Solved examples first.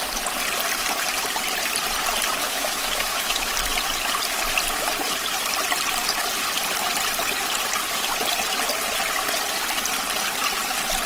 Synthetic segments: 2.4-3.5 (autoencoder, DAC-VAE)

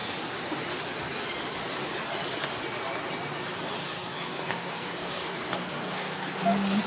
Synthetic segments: 3.8-6.4 (codec, SNAC)

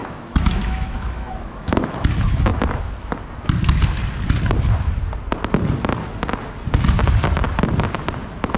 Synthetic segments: 0.0-1.9 (autoencoder, DAC-VAE)

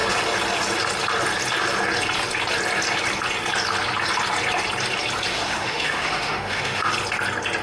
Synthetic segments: 5.3-6.9 (autoencoder, DAC-VAE)